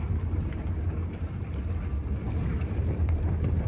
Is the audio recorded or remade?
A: recorded